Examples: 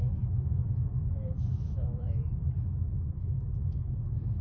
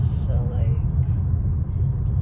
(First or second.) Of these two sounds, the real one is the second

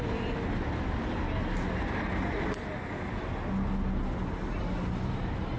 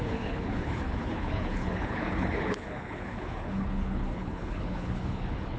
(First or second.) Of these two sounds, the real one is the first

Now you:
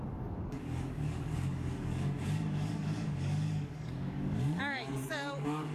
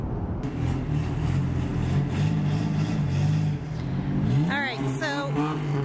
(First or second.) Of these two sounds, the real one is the second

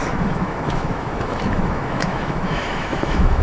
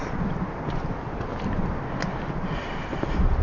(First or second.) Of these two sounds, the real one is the second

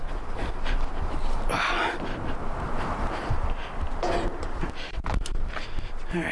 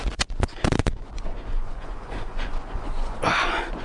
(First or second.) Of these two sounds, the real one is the first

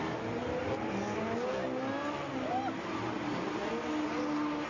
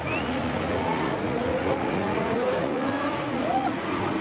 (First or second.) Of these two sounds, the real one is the first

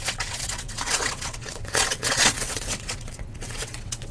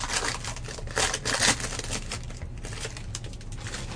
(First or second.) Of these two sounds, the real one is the second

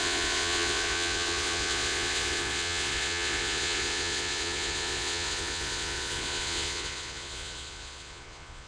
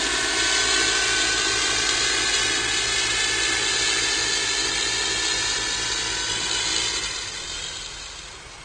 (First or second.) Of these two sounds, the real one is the second